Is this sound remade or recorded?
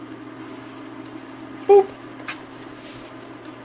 recorded